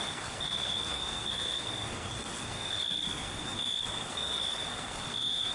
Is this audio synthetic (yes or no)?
yes